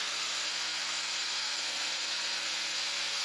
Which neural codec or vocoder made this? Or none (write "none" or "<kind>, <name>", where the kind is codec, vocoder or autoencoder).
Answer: codec, SNAC